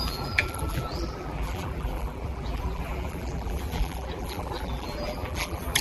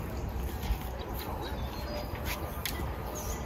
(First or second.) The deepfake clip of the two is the first